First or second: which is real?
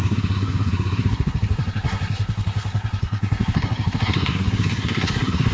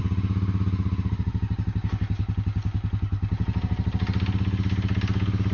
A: second